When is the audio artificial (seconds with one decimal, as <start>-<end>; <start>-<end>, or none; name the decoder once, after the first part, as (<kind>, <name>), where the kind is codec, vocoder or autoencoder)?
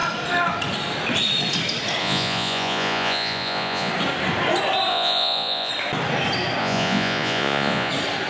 2.0-3.9 (vocoder, Vocos); 4.9-5.7; 6.6-7.9